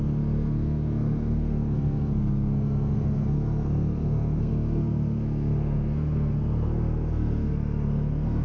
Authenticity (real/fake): fake